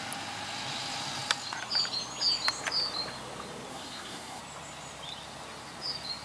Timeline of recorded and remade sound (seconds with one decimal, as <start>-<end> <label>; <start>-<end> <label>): 0.0-3.7 recorded; 3.7-4.4 remade; 4.4-6.2 recorded